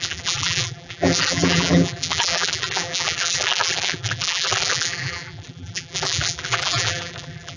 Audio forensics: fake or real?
fake